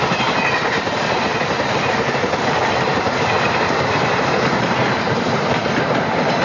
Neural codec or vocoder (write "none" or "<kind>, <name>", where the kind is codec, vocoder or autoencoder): vocoder, BigVGAN v2